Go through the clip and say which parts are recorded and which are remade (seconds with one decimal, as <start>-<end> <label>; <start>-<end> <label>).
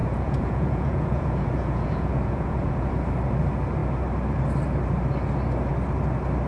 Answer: 0.0-2.9 remade; 2.9-6.5 recorded